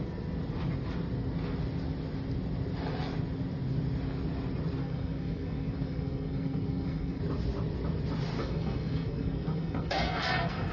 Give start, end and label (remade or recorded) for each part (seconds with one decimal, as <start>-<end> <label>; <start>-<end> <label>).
0.0-4.8 recorded; 4.8-7.2 remade; 7.2-8.4 recorded; 8.4-10.7 remade